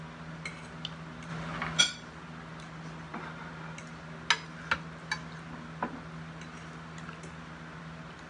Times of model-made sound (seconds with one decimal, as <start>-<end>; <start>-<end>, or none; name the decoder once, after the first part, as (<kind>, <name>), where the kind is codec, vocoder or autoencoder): none